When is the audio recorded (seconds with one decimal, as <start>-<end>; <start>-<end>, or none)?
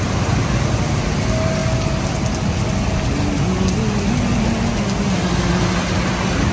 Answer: 0.0-6.5